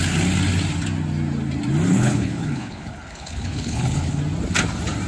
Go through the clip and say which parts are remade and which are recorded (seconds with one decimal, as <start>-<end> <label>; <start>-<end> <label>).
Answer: 0.0-1.9 recorded; 1.9-4.2 remade; 4.2-5.1 recorded